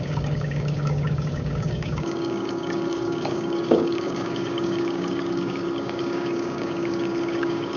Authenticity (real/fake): fake